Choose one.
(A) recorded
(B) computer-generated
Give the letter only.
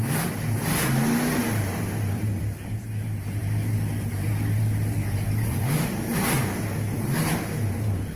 A